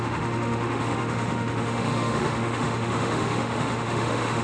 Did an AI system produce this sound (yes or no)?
yes